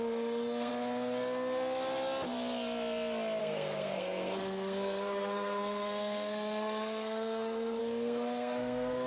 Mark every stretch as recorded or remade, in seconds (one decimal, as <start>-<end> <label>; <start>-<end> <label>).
0.0-0.7 remade; 0.7-3.4 recorded; 3.4-9.1 remade